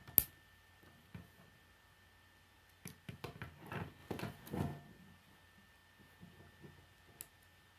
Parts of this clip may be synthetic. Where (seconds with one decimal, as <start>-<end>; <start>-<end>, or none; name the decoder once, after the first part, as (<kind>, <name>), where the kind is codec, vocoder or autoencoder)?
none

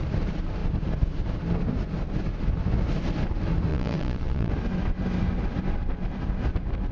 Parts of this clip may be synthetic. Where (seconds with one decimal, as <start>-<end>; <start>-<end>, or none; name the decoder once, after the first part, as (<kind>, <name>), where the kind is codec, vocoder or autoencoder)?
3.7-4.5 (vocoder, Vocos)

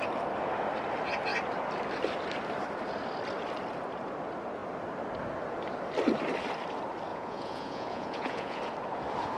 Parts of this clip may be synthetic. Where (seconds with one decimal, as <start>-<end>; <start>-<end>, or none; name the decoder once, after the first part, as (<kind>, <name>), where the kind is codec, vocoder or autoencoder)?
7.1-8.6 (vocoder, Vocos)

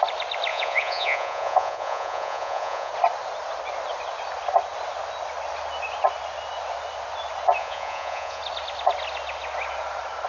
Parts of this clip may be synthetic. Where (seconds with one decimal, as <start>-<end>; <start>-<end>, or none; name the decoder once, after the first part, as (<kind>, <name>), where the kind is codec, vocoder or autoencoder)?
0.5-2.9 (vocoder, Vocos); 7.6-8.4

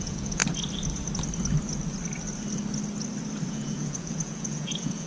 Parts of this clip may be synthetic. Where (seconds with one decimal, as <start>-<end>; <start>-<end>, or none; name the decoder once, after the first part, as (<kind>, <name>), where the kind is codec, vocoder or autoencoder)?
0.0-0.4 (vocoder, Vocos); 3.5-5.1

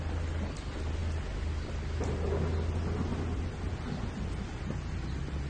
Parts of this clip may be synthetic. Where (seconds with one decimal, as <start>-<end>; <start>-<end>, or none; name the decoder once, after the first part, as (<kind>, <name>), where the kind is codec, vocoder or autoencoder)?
none